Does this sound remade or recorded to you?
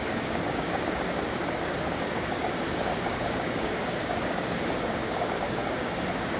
remade